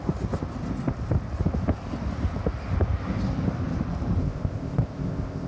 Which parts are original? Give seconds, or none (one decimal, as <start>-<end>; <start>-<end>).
0.0-4.2